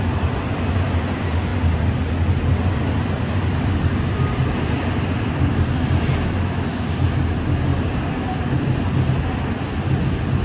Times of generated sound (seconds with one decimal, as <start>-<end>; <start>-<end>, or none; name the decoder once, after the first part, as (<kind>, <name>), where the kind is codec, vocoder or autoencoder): none